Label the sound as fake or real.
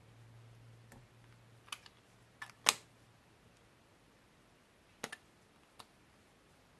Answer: real